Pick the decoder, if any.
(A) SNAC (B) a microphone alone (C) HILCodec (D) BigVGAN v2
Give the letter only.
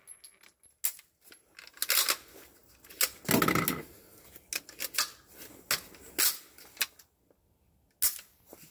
B